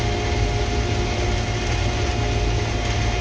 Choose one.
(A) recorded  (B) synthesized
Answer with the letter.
A